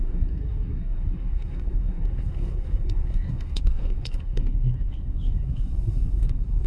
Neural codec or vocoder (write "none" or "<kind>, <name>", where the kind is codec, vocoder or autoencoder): codec, SNAC